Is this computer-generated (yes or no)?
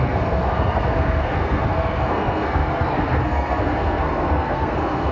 yes